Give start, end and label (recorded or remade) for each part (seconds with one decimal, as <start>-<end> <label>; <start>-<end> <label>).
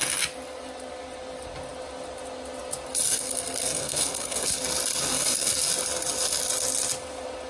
0.0-3.1 recorded; 3.1-4.6 remade; 4.6-5.1 recorded; 5.1-5.7 remade; 5.7-7.5 recorded